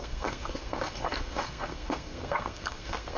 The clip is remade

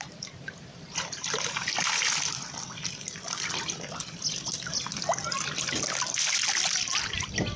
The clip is recorded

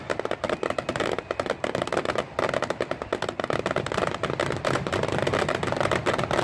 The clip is recorded